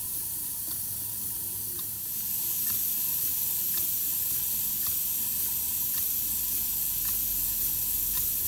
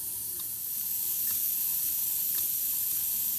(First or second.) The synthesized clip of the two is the second